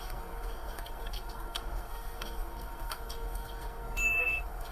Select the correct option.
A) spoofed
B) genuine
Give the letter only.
A